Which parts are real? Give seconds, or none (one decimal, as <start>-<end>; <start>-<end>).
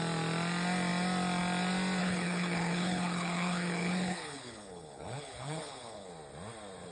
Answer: 0.0-2.0; 6.1-6.9